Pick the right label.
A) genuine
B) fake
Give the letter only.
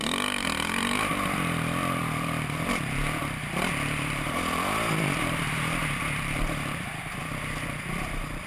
B